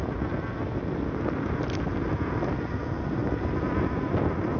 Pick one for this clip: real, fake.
real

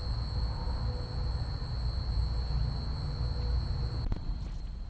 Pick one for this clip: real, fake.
real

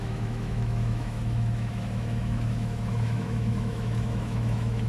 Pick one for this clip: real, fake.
fake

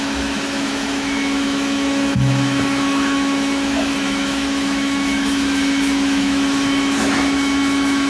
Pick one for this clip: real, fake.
fake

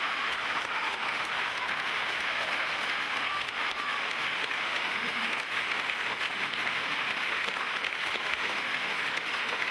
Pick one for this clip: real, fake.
fake